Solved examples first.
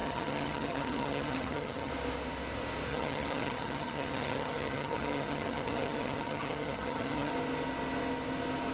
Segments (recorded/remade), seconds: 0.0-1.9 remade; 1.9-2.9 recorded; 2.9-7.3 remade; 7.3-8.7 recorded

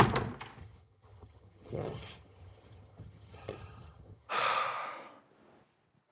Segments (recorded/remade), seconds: 0.0-0.6 recorded; 0.6-4.3 remade; 4.3-6.1 recorded